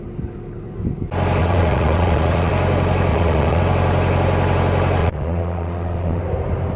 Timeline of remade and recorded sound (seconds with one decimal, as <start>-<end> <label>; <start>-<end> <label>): 0.0-1.4 recorded; 1.4-2.5 remade; 2.5-3.1 recorded; 3.1-3.6 remade; 3.6-5.0 recorded; 5.0-6.2 remade; 6.2-6.8 recorded